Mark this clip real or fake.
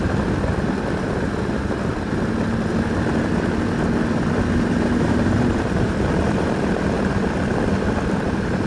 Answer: real